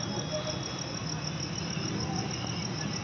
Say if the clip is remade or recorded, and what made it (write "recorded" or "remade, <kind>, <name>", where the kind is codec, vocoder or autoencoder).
recorded